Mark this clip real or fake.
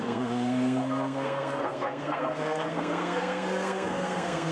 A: fake